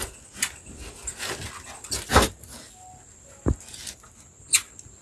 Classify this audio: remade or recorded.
recorded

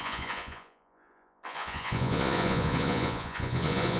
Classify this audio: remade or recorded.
remade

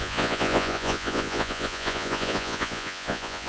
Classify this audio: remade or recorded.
remade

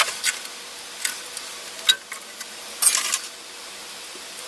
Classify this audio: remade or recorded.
recorded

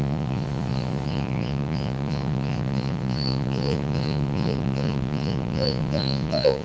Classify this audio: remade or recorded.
remade